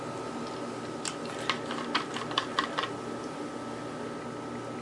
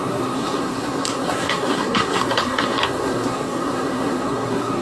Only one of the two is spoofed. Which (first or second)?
second